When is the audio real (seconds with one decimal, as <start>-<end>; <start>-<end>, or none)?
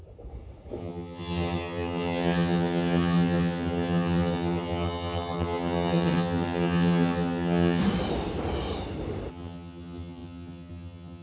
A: 0.0-0.8; 7.8-9.3